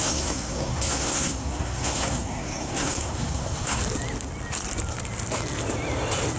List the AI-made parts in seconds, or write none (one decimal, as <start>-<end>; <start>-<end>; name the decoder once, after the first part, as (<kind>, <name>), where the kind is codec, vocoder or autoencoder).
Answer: 0.0-3.8 (codec, SNAC)